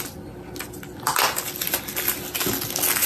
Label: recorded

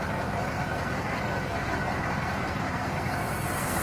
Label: remade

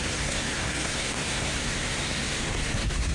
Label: remade